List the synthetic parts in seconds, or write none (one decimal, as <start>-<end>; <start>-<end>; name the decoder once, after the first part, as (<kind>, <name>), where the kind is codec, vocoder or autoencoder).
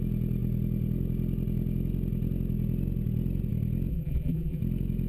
3.9-4.6 (vocoder, BigVGAN v2)